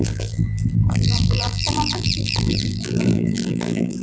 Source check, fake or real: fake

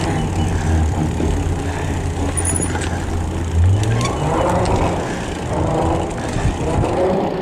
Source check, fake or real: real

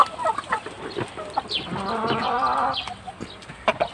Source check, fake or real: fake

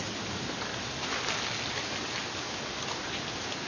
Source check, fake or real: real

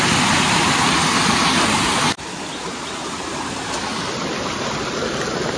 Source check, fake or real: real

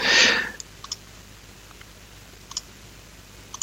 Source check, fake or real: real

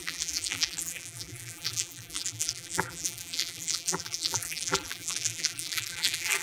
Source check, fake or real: fake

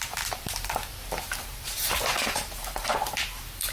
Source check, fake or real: fake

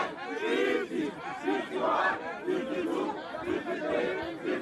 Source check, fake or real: real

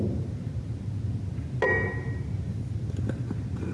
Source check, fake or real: real